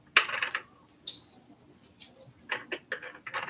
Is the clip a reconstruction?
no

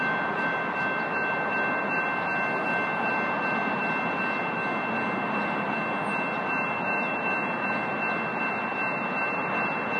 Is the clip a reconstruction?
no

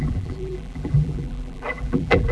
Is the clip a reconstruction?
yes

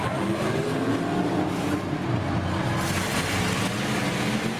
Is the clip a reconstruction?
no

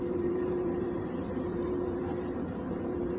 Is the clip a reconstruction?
yes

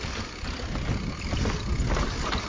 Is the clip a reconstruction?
no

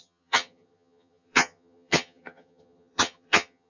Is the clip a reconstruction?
yes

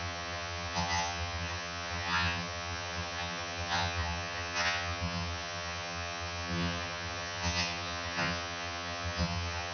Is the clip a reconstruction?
yes